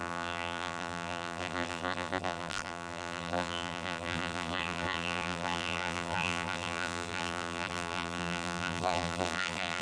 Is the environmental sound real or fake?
fake